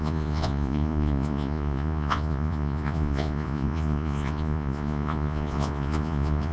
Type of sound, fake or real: fake